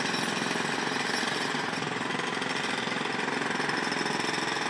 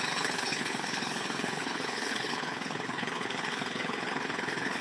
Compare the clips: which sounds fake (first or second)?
second